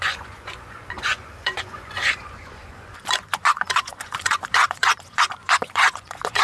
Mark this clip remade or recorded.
remade